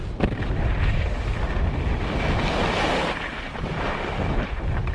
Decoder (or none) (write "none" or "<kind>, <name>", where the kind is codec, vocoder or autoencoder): none